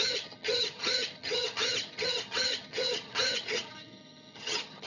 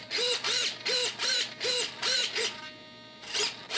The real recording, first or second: second